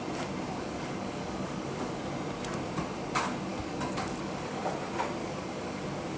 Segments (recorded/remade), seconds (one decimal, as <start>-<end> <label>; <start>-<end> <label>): 0.0-0.5 recorded; 0.5-2.0 remade; 2.0-3.5 recorded; 3.5-4.7 remade; 4.7-5.2 recorded; 5.2-5.8 remade; 5.8-6.2 recorded